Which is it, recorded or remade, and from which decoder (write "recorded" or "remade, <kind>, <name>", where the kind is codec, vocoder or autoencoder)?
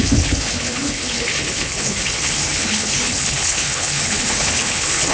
remade, codec, HILCodec